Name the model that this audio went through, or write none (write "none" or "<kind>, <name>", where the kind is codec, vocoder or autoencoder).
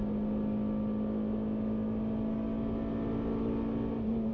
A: none